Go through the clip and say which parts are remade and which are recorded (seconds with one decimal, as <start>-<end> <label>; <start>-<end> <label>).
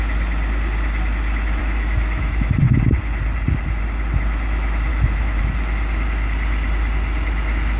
0.0-1.6 recorded; 1.6-2.6 remade; 2.6-4.9 recorded; 4.9-5.4 remade; 5.4-7.8 recorded